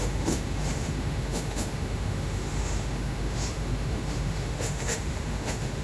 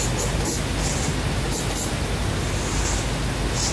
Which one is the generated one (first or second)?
first